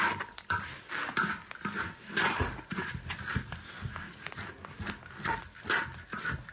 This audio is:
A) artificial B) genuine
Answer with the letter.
B